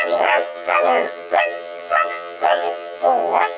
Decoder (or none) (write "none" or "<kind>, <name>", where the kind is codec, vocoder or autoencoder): vocoder, HiFi-GAN